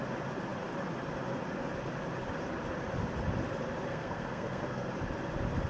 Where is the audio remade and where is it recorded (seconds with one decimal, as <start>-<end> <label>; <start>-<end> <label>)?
0.0-3.9 recorded; 3.9-4.9 remade; 4.9-5.7 recorded